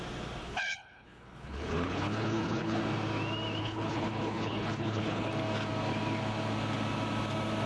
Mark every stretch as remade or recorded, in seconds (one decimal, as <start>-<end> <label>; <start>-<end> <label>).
0.0-0.4 recorded; 0.4-2.8 remade; 2.8-3.6 recorded; 3.6-5.3 remade; 5.3-7.7 recorded